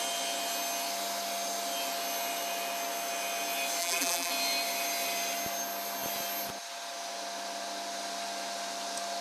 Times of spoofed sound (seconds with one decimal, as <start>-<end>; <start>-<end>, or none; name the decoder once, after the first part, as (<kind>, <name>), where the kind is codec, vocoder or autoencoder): 3.8-4.3 (vocoder, BigVGAN v2)